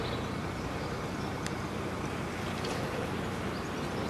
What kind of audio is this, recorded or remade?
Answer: recorded